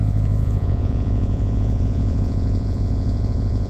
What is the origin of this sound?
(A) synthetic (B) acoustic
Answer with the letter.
A